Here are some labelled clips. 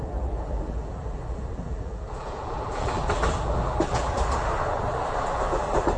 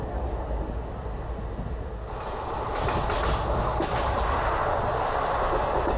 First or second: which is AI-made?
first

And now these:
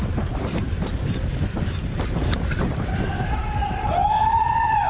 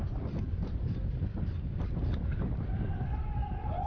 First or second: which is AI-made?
first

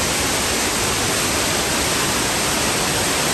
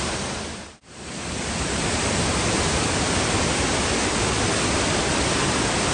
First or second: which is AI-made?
second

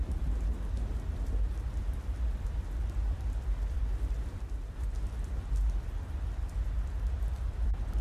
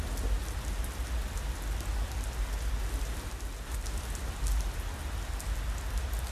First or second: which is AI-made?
first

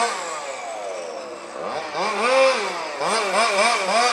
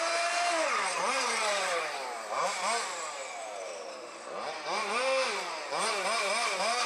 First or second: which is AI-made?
second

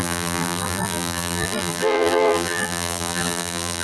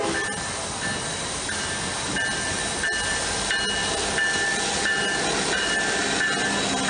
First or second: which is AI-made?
first